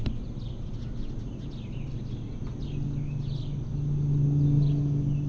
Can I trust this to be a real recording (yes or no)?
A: yes